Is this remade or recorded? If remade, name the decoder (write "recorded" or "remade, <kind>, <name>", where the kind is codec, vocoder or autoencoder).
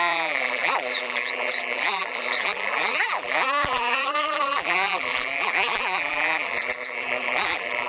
remade, vocoder, BigVGAN v2